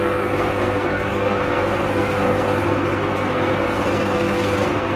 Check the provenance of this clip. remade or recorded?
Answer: remade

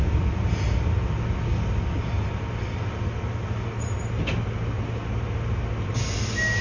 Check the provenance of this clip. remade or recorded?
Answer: recorded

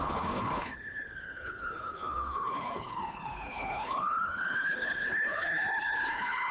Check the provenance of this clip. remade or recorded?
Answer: remade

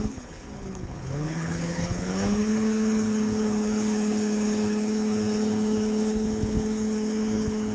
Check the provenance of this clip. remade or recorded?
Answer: remade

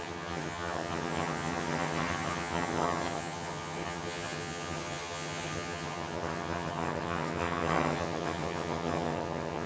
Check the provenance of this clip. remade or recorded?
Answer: remade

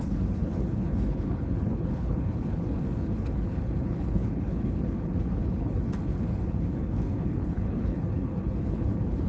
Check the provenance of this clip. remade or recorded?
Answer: remade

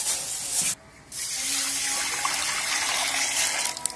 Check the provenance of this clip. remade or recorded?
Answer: recorded